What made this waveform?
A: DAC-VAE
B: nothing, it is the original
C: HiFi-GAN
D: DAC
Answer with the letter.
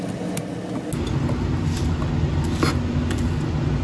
B